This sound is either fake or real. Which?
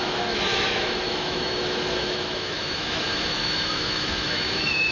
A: fake